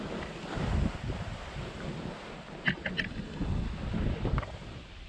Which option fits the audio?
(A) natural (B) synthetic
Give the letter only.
A